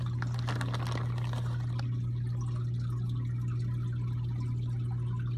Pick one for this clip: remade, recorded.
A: recorded